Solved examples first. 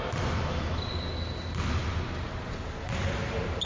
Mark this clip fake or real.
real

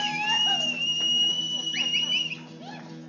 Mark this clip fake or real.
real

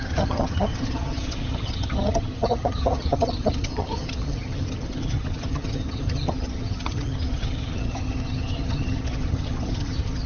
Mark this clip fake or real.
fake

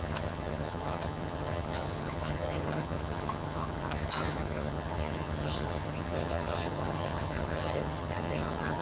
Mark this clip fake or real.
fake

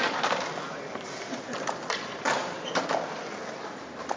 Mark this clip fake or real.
real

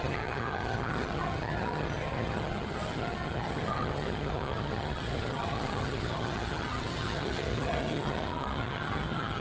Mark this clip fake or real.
fake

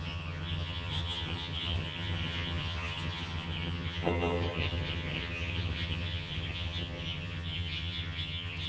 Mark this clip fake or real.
fake